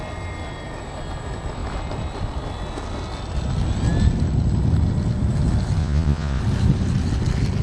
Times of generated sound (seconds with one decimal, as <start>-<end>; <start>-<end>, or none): 5.8-6.4